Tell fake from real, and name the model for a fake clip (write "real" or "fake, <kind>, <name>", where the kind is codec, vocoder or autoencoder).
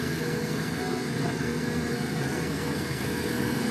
fake, codec, SNAC